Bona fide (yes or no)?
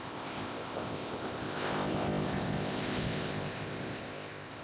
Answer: no